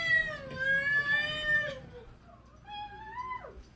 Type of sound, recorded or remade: recorded